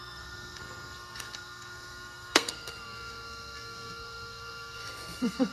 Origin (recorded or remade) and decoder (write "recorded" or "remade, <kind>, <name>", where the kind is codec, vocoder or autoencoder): remade, codec, SNAC